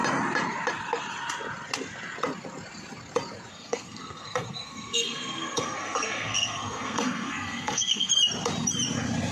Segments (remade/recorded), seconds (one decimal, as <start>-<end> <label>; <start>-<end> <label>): 0.0-3.5 recorded; 3.5-8.1 remade; 8.1-9.3 recorded